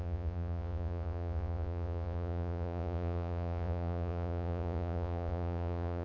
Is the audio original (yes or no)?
no